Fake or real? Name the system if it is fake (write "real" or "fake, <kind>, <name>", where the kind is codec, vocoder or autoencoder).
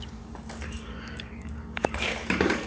fake, codec, DAC